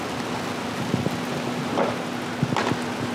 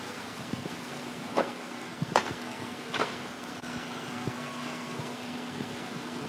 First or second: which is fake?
second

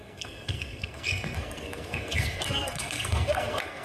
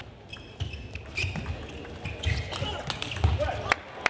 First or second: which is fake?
first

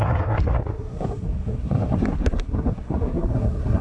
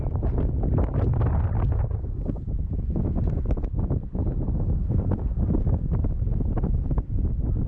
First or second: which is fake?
first